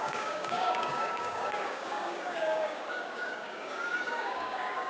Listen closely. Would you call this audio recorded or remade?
remade